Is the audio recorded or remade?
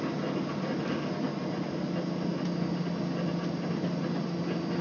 recorded